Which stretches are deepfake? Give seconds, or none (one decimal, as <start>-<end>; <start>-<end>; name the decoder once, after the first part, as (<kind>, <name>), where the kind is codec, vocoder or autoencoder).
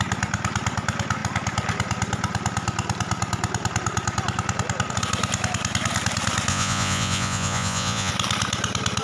6.5-8.1 (vocoder, Vocos)